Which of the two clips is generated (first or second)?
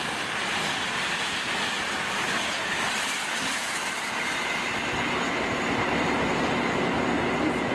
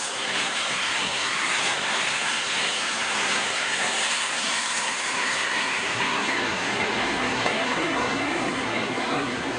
second